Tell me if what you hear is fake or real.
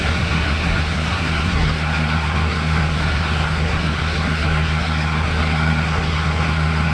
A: fake